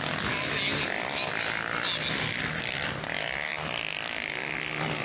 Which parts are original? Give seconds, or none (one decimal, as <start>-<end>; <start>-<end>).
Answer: 0.0-5.0